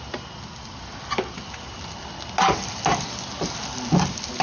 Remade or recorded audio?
recorded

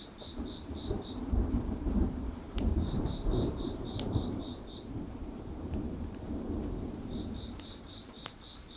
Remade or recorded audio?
remade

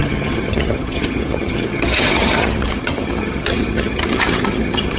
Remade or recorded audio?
remade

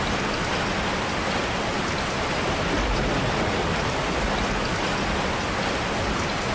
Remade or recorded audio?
recorded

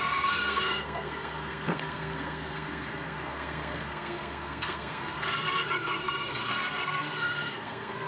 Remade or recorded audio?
remade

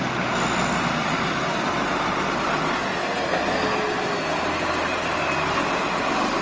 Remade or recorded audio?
recorded